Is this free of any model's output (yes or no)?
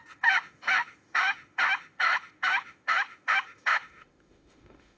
no